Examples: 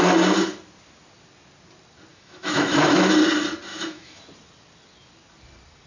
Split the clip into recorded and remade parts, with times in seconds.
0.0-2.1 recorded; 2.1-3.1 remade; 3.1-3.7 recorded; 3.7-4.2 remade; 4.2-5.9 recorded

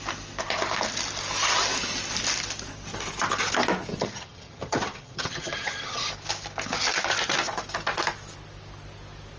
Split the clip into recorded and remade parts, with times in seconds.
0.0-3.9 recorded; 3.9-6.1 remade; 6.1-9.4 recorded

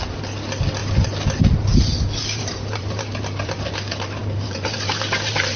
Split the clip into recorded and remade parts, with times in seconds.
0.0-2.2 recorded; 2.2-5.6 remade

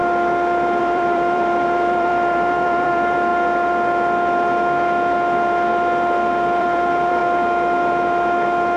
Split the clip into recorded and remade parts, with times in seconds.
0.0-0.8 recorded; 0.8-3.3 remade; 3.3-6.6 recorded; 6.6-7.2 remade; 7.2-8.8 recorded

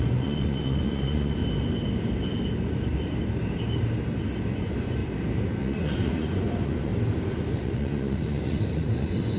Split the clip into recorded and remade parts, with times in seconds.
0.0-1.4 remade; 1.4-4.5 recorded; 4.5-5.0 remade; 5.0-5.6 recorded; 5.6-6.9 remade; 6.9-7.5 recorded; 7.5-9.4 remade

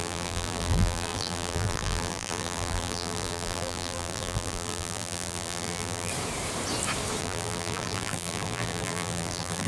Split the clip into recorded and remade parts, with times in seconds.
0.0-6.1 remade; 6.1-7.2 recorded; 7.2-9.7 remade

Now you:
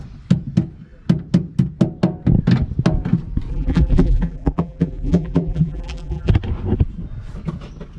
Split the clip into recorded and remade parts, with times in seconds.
0.0-3.5 recorded; 3.5-6.3 remade; 6.3-8.0 recorded